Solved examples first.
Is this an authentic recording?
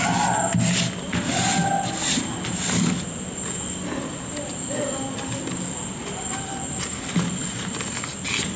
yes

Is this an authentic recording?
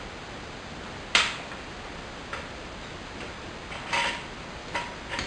yes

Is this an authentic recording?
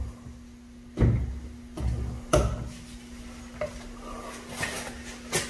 yes